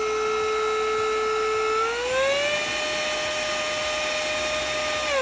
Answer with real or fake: real